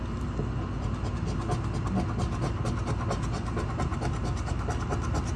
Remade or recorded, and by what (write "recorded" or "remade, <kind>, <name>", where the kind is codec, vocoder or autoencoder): recorded